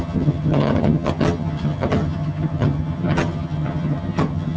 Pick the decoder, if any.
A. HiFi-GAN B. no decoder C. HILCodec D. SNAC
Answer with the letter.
A